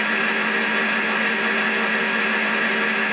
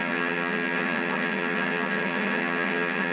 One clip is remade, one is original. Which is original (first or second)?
first